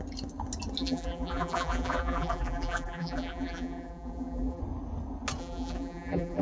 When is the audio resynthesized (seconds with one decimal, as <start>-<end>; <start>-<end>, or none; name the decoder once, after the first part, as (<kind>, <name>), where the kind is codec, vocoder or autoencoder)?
0.8-4.6 (vocoder, BigVGAN v2); 5.4-6.4